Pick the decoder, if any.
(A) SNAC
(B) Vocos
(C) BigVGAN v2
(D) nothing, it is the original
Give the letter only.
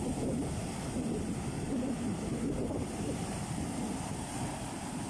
D